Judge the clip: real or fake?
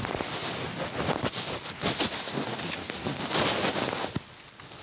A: real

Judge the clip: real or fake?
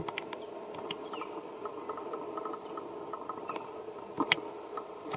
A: real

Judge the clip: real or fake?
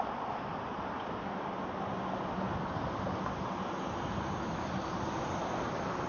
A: real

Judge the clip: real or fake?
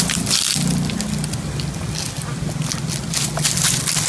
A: real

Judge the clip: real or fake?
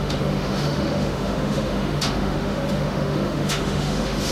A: fake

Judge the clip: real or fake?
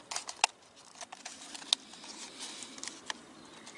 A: real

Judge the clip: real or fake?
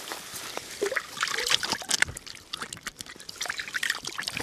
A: real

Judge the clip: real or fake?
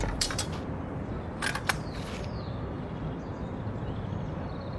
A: fake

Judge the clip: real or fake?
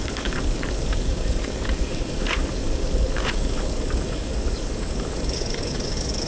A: fake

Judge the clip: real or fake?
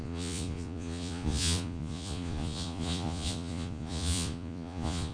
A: fake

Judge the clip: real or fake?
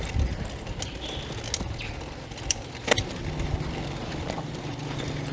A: real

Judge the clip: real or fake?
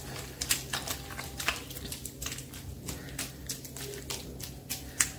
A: real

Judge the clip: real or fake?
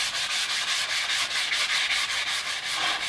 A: real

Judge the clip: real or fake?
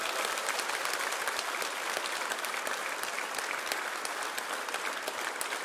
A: real